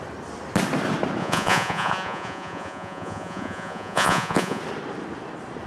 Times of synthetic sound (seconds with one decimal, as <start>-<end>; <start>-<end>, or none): 1.2-4.6